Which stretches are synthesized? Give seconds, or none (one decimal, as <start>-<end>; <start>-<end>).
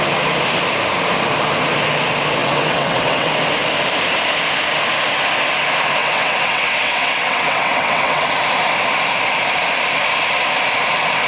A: 2.4-3.3; 6.0-8.3